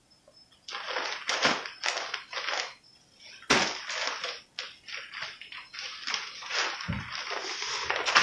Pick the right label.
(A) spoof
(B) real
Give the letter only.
B